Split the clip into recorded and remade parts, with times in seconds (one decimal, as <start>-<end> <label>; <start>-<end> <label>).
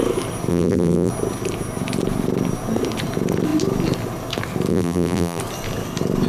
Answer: 0.0-0.5 recorded; 0.5-1.1 remade; 1.1-4.7 recorded; 4.7-5.4 remade; 5.4-6.3 recorded